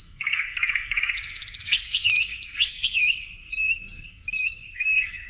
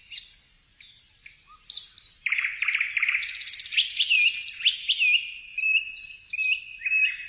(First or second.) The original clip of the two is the second